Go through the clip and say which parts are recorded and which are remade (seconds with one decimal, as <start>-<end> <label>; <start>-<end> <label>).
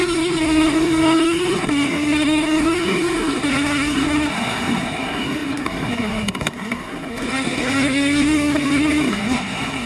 0.0-9.9 remade